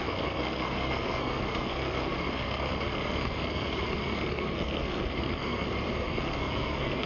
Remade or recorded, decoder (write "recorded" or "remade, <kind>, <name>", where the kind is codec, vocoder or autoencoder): remade, codec, SNAC